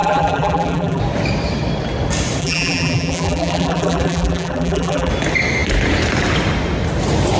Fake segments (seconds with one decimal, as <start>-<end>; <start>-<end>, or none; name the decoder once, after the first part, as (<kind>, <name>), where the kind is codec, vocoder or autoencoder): 0.0-1.0 (vocoder, BigVGAN v2); 2.4-5.1